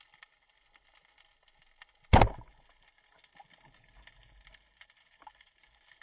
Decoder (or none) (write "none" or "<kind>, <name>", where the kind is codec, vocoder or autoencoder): none